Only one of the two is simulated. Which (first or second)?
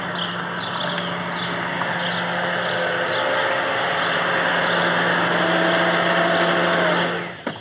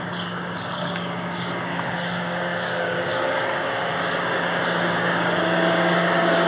second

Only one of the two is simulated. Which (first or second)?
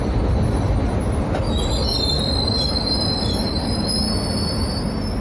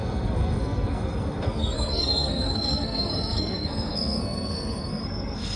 second